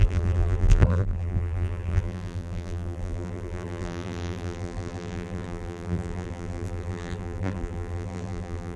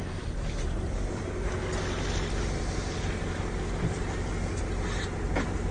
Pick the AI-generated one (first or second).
first